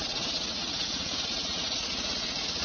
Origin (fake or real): fake